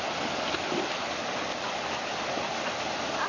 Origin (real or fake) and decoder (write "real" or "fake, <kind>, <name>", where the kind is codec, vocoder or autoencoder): real